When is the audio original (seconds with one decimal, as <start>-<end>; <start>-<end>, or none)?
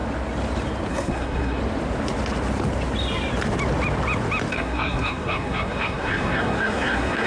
0.0-0.9; 1.6-4.5